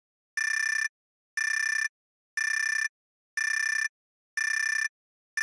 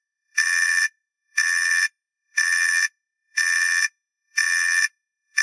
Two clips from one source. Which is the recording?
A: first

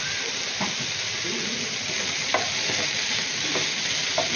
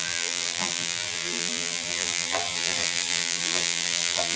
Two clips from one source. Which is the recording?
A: first